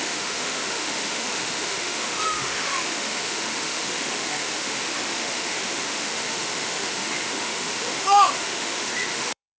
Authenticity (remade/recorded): remade